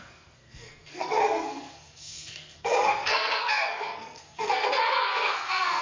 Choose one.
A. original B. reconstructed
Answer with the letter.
B